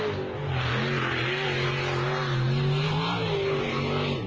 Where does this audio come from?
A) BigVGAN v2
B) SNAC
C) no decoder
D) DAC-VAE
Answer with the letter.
C